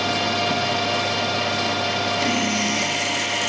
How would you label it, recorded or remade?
recorded